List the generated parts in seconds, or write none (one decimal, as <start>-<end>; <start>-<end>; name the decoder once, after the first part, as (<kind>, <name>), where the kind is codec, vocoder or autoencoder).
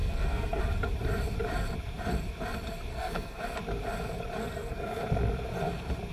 0.0-0.6 (codec, SNAC); 2.9-3.4; 4.4-5.0